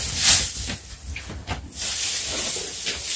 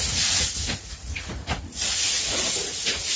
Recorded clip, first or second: first